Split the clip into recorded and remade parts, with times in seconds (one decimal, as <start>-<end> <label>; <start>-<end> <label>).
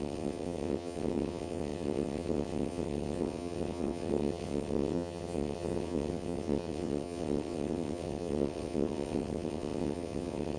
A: 0.0-10.6 remade